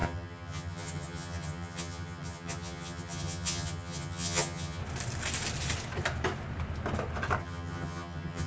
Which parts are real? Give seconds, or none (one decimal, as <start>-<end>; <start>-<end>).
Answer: 4.8-7.4